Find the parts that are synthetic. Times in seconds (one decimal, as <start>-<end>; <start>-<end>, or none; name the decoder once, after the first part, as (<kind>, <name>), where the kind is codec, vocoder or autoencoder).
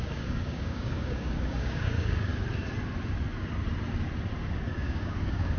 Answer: 0.0-2.3 (codec, DAC); 4.7-5.6